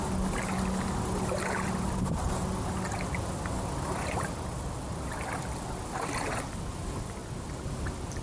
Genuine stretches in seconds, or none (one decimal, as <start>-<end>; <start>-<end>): 0.0-8.2